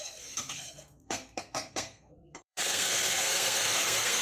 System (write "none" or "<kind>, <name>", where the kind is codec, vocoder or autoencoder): codec, SNAC